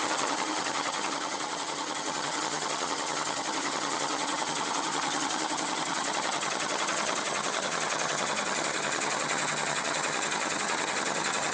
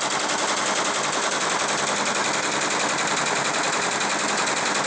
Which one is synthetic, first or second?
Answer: first